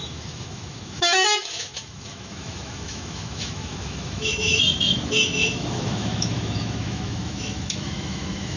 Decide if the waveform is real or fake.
fake